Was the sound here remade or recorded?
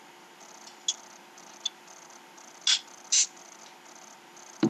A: recorded